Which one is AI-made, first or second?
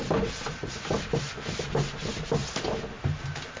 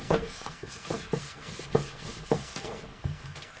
second